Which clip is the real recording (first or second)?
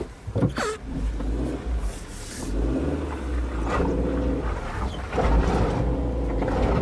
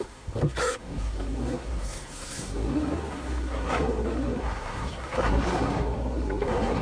first